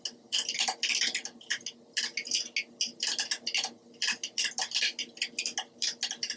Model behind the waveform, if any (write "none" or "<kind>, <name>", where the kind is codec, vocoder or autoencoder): none